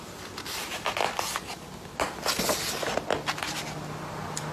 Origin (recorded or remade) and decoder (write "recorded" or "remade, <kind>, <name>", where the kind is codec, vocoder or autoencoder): recorded